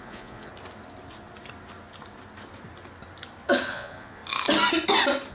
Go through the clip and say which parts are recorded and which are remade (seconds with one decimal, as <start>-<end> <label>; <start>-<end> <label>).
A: 0.0-0.5 remade; 0.5-3.7 recorded; 3.7-4.2 remade; 4.2-5.3 recorded